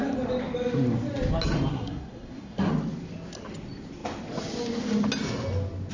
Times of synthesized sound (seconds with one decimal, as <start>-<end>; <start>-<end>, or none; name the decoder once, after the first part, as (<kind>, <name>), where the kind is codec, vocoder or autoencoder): 1.7-2.7 (codec, SNAC)